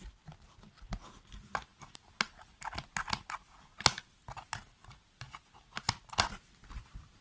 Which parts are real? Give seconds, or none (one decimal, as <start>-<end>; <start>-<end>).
0.0-7.2